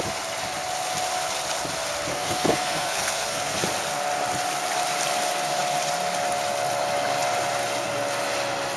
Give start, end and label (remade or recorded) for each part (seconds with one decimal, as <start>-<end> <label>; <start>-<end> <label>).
0.0-2.1 recorded; 2.1-3.6 remade; 3.6-8.8 recorded